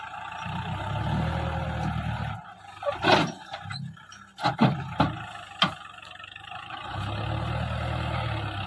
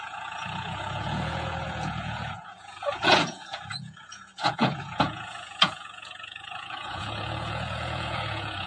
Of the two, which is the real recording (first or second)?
first